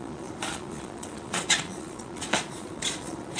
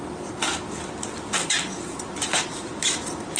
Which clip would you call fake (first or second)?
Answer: first